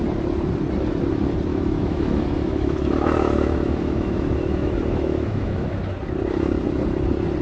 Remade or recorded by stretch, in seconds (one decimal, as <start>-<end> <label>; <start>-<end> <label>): 0.0-1.5 recorded; 1.5-5.8 remade; 5.8-7.4 recorded